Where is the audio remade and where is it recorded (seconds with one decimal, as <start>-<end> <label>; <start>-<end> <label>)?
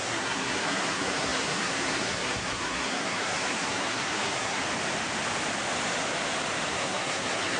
0.0-4.6 remade; 4.6-6.7 recorded; 6.7-7.6 remade